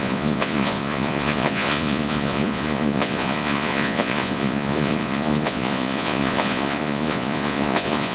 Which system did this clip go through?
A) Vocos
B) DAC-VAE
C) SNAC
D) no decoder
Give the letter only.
A